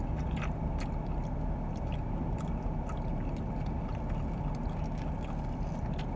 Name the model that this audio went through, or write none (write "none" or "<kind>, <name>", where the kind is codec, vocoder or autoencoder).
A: none